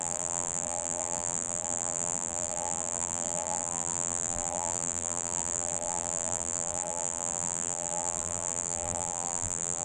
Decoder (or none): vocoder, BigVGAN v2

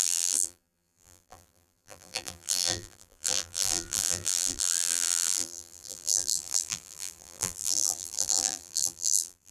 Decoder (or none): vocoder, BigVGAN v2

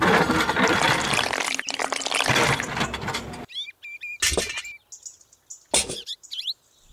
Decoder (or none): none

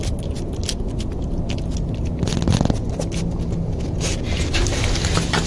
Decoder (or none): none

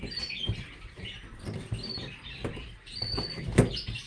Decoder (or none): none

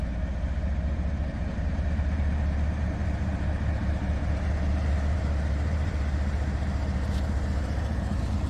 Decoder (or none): vocoder, BigVGAN v2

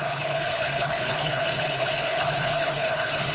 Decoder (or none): codec, HILCodec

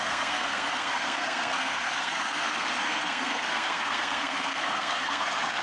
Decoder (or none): codec, SNAC